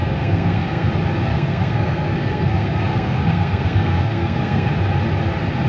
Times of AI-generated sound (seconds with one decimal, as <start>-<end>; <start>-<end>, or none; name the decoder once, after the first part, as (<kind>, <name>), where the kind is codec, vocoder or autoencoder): 0.0-0.9 (codec, SNAC); 1.3-4.7